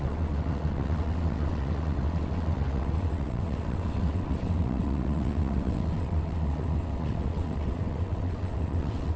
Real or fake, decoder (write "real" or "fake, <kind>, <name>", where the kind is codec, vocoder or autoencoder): fake, vocoder, WaveNeXt